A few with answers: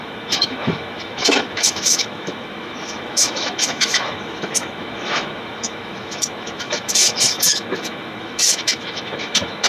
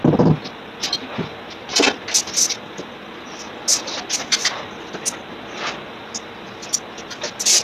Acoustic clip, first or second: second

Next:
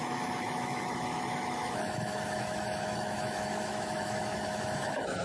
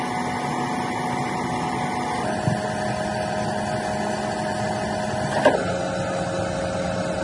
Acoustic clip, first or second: second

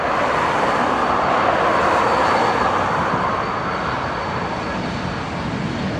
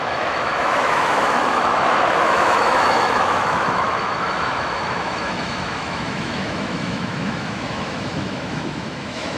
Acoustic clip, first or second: first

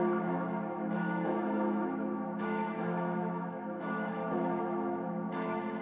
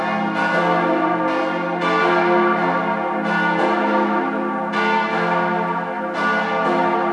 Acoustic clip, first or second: second